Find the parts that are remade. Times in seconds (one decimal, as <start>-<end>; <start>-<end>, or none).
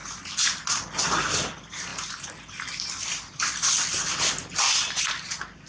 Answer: none